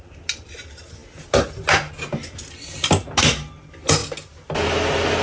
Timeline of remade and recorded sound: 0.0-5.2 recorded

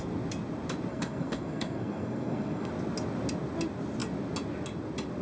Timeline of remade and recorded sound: 0.0-0.9 recorded; 0.9-2.7 remade; 2.7-5.2 recorded

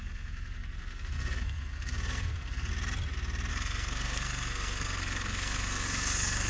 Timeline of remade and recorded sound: 0.0-2.7 remade; 2.7-3.5 recorded; 3.5-6.5 remade

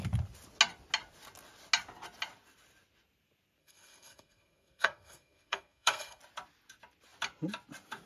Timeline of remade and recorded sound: 0.0-3.6 recorded; 3.6-6.2 remade; 6.2-8.1 recorded

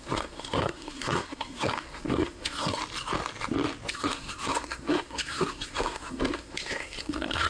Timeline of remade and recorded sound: 0.0-2.8 remade; 2.8-3.9 recorded; 3.9-7.5 remade

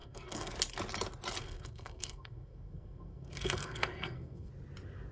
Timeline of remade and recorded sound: 0.0-0.5 remade; 0.5-1.4 recorded; 1.4-4.5 remade; 4.5-5.1 recorded